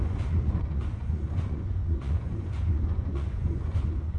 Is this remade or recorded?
remade